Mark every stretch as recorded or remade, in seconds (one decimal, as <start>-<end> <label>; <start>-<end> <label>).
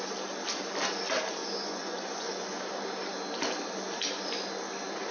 0.0-1.4 recorded; 1.4-2.5 remade; 2.5-5.1 recorded